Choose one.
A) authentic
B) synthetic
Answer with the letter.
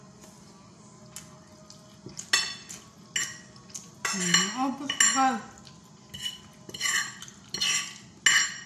A